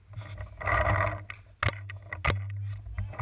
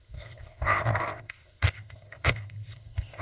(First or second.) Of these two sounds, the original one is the first